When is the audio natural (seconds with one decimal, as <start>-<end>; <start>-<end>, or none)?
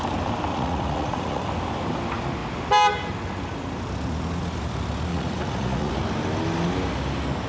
0.0-0.5; 1.5-5.1; 5.9-7.5